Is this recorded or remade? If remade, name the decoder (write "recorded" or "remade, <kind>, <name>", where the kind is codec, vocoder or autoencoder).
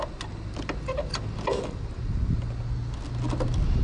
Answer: recorded